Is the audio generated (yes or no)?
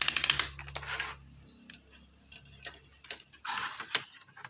yes